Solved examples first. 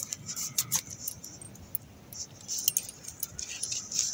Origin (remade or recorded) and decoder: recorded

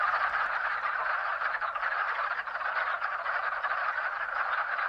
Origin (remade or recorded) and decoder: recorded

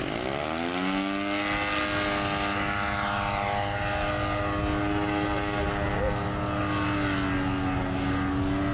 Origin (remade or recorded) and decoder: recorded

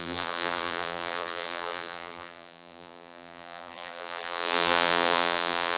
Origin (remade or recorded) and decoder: remade, vocoder, BigVGAN v2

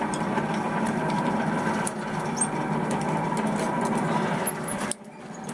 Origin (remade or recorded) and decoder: recorded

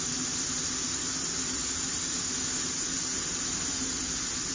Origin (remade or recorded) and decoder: recorded